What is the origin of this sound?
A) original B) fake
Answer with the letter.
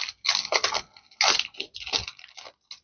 A